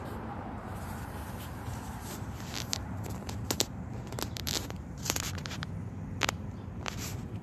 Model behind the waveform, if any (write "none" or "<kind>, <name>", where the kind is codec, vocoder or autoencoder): vocoder, BigVGAN v2